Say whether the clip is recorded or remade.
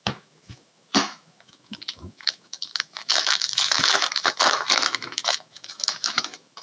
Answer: remade